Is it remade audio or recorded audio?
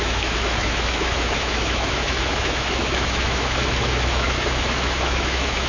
remade